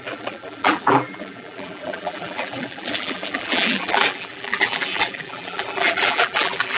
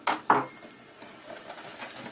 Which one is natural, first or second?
second